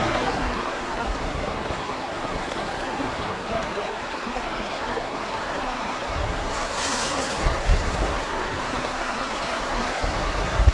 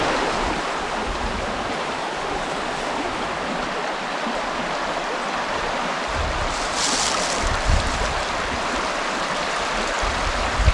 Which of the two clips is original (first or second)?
second